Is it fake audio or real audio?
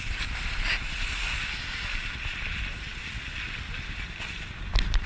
real